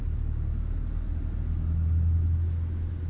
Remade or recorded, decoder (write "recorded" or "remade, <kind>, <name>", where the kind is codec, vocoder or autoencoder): recorded